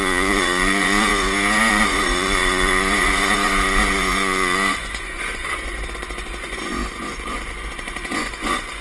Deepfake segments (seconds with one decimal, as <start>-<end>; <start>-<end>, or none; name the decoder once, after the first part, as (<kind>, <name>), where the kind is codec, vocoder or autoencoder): 0.0-1.1 (vocoder, Vocos); 1.7-8.8